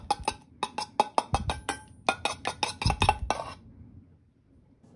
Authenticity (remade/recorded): recorded